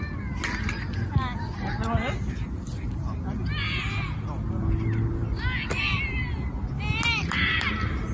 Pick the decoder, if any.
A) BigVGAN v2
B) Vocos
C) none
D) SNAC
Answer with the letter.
C